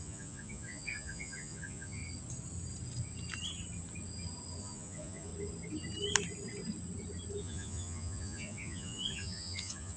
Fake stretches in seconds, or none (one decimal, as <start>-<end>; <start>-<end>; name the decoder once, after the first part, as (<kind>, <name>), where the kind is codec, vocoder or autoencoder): 0.0-2.0 (vocoder, Vocos); 4.6-5.3; 7.4-10.0